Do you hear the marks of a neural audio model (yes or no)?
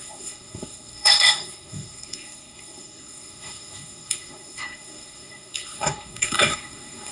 yes